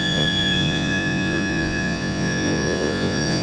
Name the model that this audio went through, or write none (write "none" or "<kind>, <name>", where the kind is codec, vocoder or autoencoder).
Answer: vocoder, Vocos